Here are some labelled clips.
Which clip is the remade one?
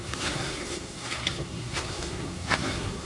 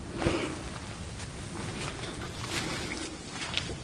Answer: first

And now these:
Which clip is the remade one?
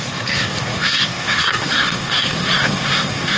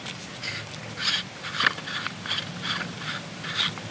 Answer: first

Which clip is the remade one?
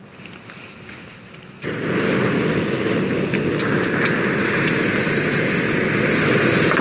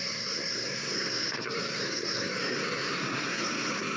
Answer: second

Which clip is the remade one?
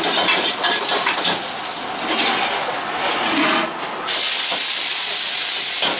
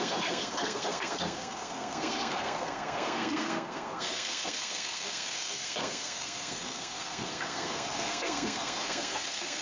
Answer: second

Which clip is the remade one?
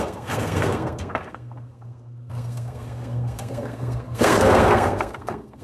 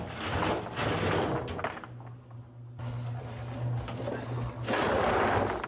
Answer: first